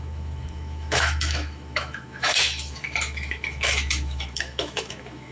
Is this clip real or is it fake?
fake